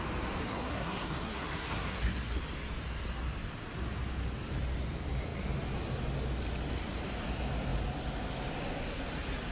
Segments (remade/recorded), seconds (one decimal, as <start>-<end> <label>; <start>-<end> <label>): 0.0-0.4 recorded; 0.4-2.4 remade; 2.4-9.5 recorded